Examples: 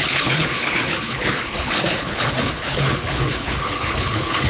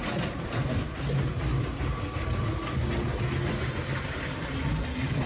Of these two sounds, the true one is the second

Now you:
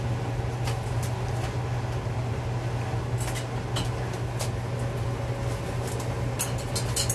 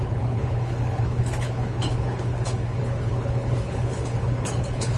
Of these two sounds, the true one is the first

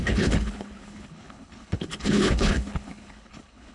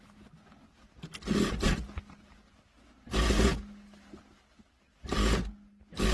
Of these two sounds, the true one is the second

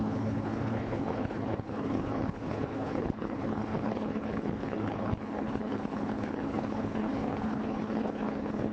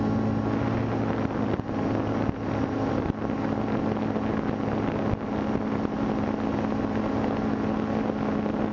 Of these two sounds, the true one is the second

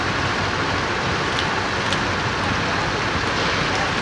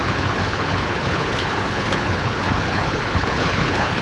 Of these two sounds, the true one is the first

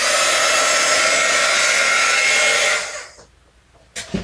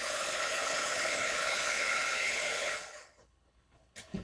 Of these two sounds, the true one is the first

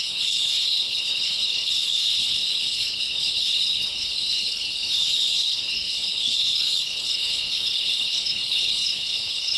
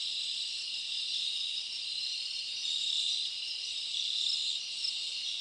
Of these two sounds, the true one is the second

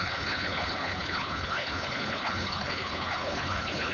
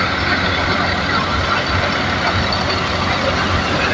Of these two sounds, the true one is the second